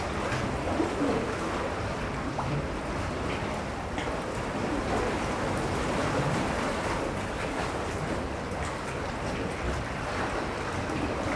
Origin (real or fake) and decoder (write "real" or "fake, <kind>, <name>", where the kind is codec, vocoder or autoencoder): real